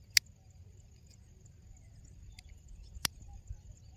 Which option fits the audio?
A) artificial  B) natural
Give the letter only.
B